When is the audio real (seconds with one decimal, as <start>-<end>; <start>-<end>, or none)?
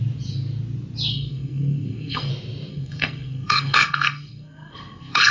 0.0-1.1; 2.3-2.7